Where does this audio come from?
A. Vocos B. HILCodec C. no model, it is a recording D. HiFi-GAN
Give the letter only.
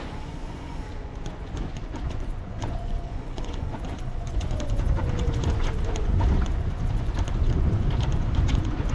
A